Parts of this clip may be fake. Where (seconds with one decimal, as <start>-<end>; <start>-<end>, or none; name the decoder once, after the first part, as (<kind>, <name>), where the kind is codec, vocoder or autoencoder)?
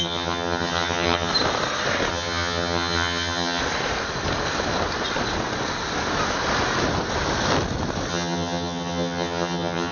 0.0-1.3 (vocoder, HiFi-GAN); 2.1-3.6; 8.1-9.9